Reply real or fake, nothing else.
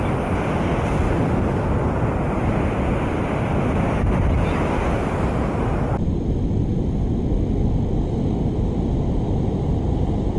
real